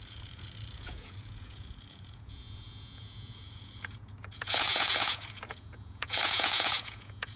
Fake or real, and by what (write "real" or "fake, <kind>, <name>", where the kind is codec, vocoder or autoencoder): fake, vocoder, Vocos